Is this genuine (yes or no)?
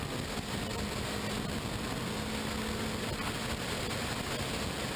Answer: yes